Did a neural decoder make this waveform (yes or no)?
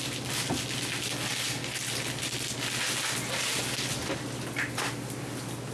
no